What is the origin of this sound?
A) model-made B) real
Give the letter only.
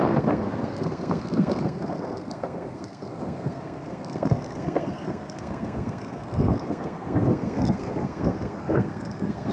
A